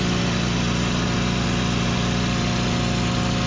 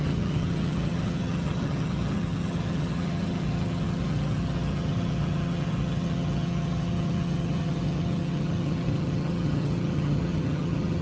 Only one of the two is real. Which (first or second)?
first